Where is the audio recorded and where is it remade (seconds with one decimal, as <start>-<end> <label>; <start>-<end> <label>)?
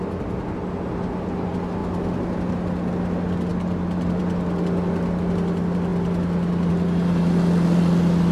0.0-8.3 recorded